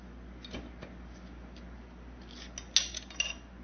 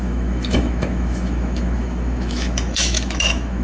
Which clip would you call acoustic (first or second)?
first